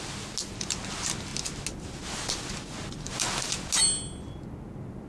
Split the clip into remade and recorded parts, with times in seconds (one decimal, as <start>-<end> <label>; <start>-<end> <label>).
0.0-5.1 recorded

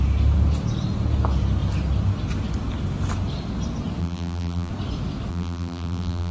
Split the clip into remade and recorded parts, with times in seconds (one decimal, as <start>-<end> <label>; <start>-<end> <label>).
0.0-4.0 recorded; 4.0-4.7 remade; 4.7-5.3 recorded; 5.3-6.3 remade

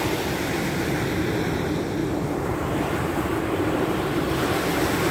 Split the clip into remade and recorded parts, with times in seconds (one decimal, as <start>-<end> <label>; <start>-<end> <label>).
0.0-2.0 recorded; 2.0-5.1 remade